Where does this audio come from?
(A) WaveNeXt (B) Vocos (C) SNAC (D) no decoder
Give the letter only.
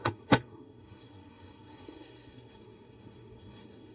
C